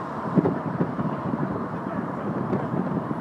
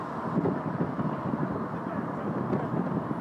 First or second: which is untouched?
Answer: second